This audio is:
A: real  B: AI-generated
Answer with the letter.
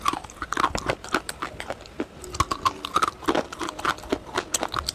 A